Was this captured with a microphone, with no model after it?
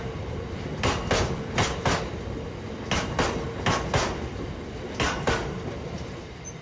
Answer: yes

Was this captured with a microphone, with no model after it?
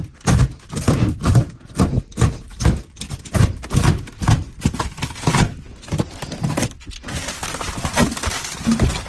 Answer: yes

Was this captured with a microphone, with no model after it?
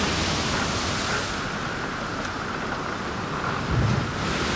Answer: yes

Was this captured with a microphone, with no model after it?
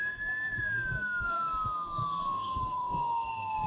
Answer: no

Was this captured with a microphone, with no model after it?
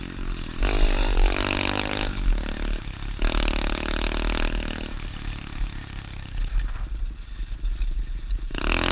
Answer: yes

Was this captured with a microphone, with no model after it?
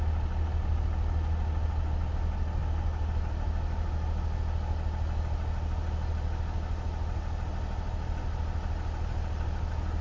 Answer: yes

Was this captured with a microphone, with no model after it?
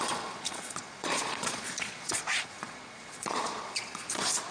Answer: no